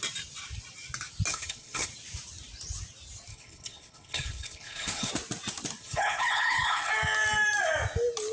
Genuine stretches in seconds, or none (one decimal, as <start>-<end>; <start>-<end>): 0.0-1.3; 1.9-3.3; 5.1-5.8; 6.9-8.3